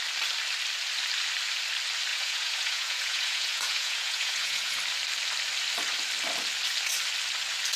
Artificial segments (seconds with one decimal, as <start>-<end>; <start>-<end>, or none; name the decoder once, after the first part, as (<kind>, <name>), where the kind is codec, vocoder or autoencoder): 2.1-4.8 (vocoder, Vocos)